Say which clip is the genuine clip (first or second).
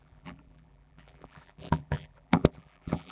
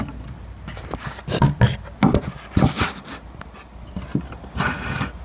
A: second